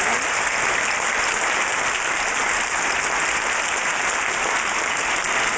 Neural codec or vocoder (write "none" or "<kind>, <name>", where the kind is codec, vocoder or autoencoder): none